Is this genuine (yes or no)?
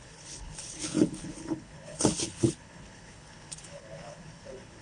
no